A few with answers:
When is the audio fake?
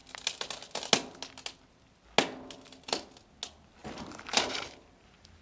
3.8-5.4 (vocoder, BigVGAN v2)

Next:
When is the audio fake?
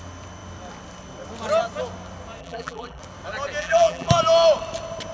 2.4-3.0 (vocoder, BigVGAN v2); 3.6-4.1